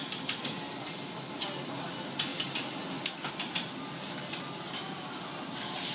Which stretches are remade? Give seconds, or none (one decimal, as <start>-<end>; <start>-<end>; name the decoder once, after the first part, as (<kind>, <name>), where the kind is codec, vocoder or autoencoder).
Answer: none